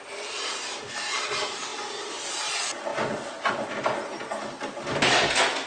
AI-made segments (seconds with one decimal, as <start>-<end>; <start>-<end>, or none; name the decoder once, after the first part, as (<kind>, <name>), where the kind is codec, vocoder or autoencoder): none